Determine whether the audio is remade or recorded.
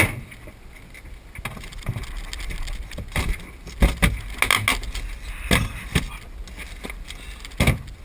recorded